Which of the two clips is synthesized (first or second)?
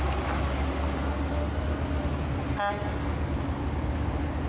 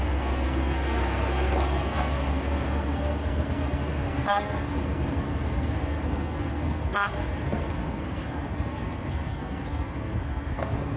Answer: second